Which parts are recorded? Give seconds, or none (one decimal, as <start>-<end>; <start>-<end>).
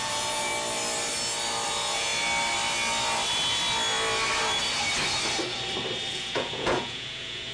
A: 0.5-1.7; 2.1-6.1